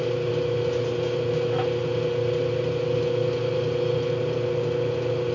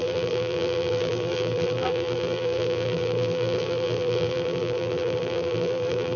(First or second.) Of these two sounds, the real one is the first